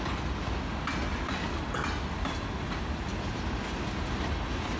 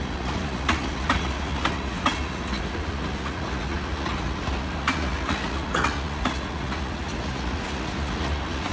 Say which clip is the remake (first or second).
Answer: second